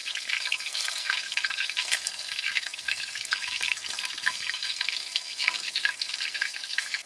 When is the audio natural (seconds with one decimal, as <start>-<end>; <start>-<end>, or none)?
none